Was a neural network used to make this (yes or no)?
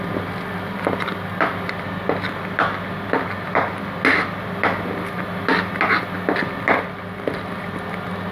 no